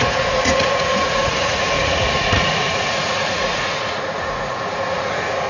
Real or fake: fake